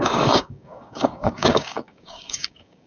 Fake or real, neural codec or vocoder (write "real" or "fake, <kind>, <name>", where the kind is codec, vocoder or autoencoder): fake, codec, DAC